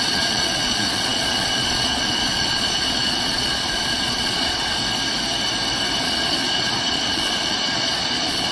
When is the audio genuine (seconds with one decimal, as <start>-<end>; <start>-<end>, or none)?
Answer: 4.8-6.0